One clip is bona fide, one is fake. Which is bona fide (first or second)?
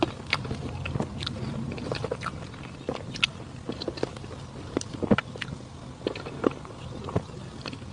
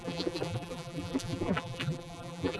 first